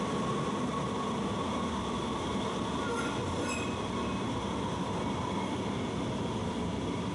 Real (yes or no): yes